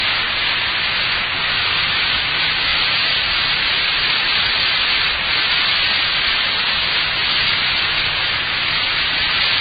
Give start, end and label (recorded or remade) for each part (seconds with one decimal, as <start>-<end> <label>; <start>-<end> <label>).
0.0-2.7 recorded; 2.7-6.6 remade; 6.6-9.6 recorded